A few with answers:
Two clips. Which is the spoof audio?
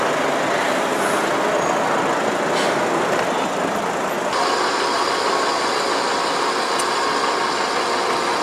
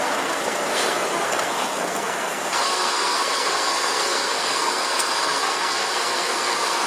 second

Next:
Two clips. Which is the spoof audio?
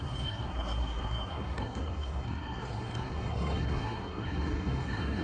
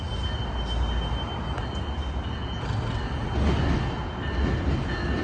first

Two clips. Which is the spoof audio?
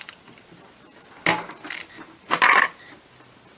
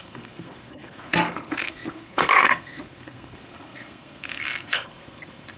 second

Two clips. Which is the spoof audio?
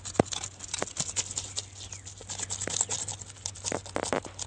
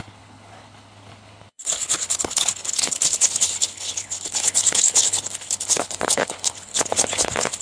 second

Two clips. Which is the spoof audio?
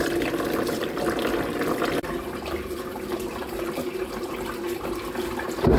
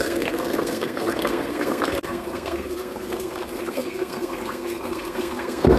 second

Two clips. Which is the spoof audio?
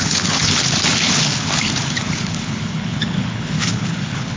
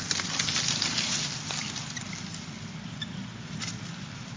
first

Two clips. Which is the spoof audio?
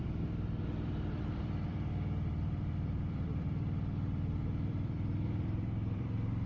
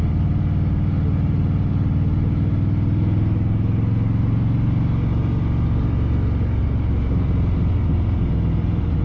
first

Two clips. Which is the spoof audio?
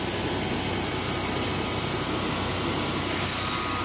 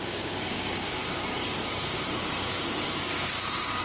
second